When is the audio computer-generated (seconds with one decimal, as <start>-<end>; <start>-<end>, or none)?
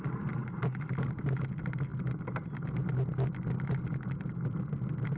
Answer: none